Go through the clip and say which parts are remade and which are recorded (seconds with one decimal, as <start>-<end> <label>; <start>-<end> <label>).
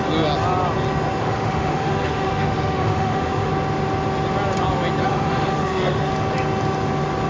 0.0-1.2 recorded; 1.2-3.5 remade; 3.5-5.0 recorded; 5.0-6.1 remade; 6.1-7.3 recorded